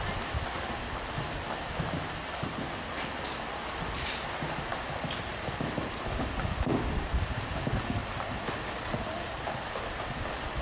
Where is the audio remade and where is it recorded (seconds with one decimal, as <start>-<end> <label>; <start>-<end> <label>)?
0.0-10.6 recorded